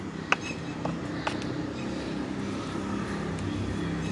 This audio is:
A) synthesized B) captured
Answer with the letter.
B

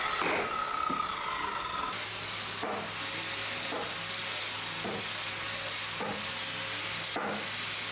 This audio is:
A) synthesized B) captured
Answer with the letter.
B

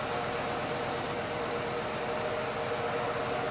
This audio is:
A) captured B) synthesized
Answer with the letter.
A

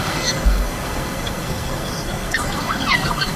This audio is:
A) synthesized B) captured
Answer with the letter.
A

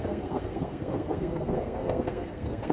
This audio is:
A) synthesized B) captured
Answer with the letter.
A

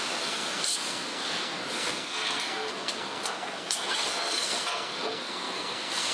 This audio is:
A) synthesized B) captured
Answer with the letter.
A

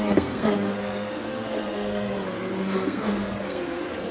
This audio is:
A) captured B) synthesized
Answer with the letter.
B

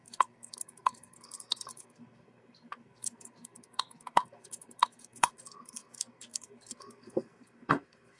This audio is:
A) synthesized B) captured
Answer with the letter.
A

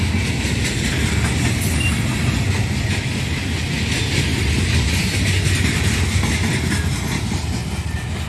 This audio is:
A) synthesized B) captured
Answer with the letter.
B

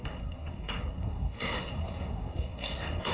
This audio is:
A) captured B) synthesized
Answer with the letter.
B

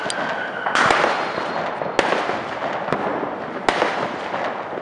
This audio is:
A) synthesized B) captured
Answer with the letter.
B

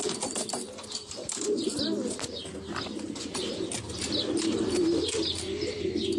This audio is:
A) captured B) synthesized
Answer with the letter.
A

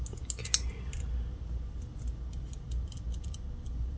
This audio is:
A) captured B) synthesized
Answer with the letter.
A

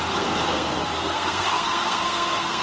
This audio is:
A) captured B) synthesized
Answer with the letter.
B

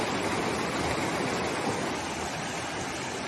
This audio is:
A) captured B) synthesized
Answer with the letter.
A